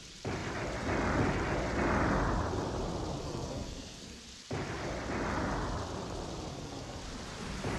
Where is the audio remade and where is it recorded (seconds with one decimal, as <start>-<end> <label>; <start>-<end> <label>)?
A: 0.0-3.2 recorded; 3.2-4.2 remade; 4.2-6.5 recorded; 6.5-7.0 remade; 7.0-7.8 recorded